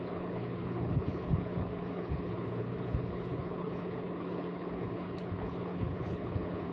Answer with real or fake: fake